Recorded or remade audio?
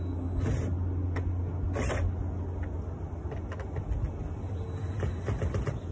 recorded